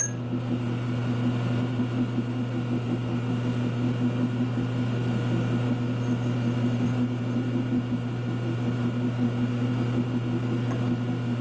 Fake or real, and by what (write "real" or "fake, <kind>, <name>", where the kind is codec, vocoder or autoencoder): real